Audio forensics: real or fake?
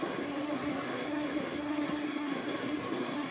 fake